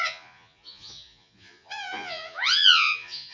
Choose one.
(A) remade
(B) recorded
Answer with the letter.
A